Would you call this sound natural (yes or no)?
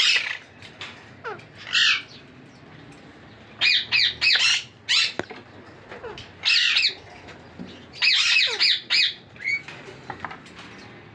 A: yes